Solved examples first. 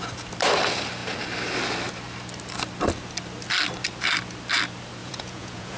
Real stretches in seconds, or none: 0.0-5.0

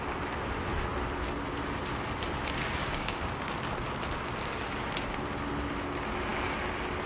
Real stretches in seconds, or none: 0.0-2.8; 3.5-7.1

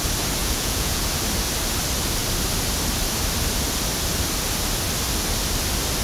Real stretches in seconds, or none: 0.0-0.4; 1.0-6.0

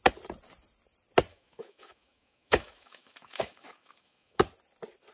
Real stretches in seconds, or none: 0.0-1.3; 4.4-5.1

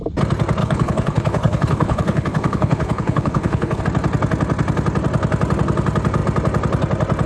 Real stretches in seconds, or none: 0.0-0.6; 3.8-7.3

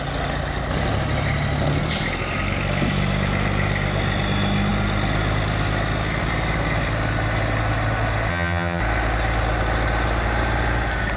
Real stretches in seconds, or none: 0.0-8.3; 8.8-11.2

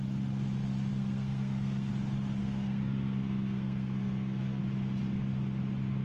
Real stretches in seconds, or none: 0.0-0.9; 1.9-2.4; 4.6-6.0